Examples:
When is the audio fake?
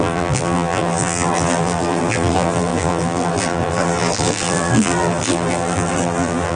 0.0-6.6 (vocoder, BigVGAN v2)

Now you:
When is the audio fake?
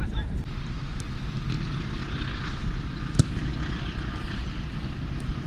none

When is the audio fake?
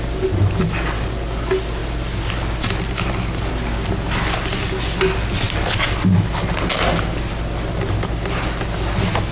none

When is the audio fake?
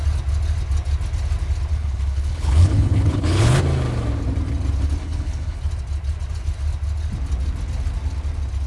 1.7-3.6 (codec, HILCodec); 5.0-5.6